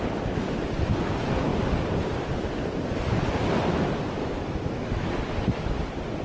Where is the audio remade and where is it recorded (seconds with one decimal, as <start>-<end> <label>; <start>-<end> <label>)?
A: 0.0-4.2 recorded; 4.2-5.1 remade; 5.1-6.2 recorded